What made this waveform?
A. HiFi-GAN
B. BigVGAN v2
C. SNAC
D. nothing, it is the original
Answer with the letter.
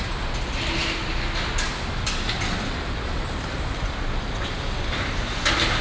D